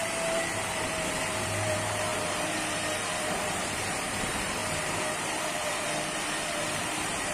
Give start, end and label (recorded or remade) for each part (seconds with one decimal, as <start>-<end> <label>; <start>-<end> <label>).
0.0-7.3 remade

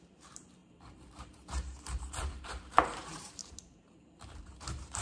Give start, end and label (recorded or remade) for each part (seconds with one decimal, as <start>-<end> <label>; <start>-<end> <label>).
0.0-5.0 remade

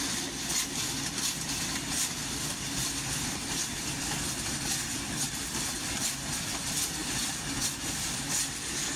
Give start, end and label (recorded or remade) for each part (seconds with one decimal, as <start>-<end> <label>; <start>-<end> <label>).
0.0-3.6 remade; 3.6-5.4 recorded; 5.4-7.0 remade; 7.0-7.9 recorded; 7.9-9.0 remade

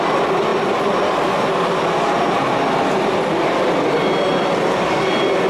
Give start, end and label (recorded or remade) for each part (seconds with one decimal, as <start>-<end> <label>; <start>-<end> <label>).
0.0-5.5 recorded

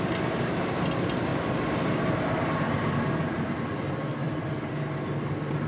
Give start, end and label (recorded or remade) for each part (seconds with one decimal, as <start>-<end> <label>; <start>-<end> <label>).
0.0-1.3 recorded; 1.3-4.7 remade; 4.7-5.7 recorded

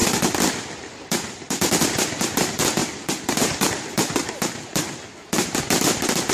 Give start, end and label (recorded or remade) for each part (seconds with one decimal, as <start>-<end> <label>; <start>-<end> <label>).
0.0-0.8 recorded; 0.8-4.2 remade; 4.2-5.4 recorded; 5.4-6.3 remade

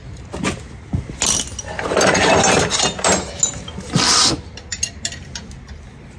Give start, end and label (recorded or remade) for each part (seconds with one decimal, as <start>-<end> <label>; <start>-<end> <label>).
0.0-6.2 recorded